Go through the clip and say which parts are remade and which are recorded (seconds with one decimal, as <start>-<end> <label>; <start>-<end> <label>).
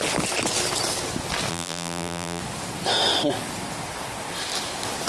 0.0-1.5 recorded; 1.5-2.4 remade; 2.4-5.1 recorded